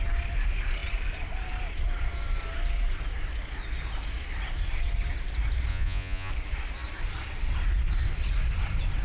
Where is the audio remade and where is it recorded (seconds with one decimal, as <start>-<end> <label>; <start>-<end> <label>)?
0.0-5.7 recorded; 5.7-6.3 remade; 6.3-9.0 recorded